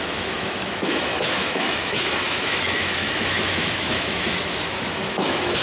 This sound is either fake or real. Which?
fake